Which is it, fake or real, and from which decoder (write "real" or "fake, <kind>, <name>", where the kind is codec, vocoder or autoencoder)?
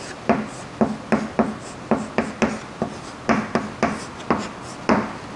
real